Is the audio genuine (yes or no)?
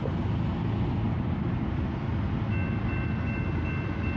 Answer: yes